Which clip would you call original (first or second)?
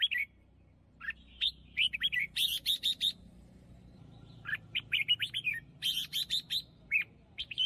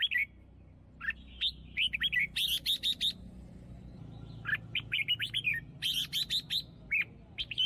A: second